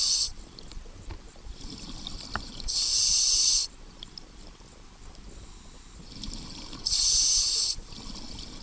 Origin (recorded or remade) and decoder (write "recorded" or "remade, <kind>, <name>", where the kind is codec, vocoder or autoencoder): remade, vocoder, BigVGAN v2